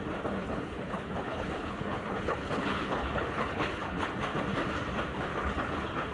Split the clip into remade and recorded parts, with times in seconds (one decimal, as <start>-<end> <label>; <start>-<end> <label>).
0.0-0.4 recorded; 0.4-4.1 remade; 4.1-5.3 recorded; 5.3-6.1 remade